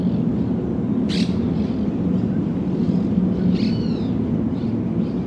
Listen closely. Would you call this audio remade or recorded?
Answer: recorded